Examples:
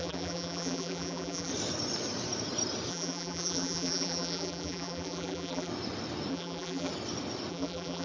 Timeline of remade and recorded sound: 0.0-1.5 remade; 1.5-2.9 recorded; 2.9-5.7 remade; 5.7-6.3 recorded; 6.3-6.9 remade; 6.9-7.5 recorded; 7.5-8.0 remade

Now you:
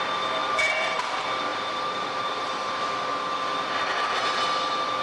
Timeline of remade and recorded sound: 0.0-0.4 recorded; 0.4-1.0 remade; 1.0-1.5 recorded; 1.5-2.9 remade; 2.9-5.0 recorded

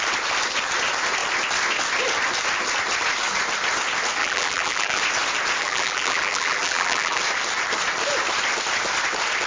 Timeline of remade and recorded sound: 0.0-4.2 recorded; 4.2-5.0 remade; 5.0-5.6 recorded; 5.6-7.2 remade; 7.2-9.5 recorded

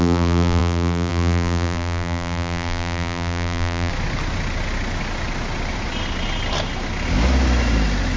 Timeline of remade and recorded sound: 0.0-3.9 remade; 3.9-8.2 recorded

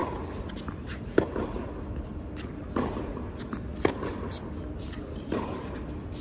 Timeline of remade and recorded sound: 0.0-3.7 recorded; 3.7-4.4 remade; 4.4-6.2 recorded

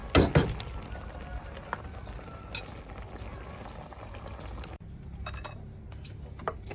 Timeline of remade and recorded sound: 0.0-6.7 recorded

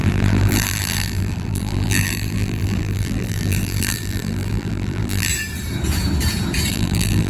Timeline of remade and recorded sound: 0.0-5.3 remade; 5.3-6.7 recorded; 6.7-7.3 remade